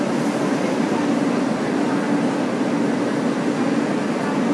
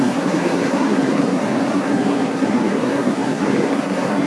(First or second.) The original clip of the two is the first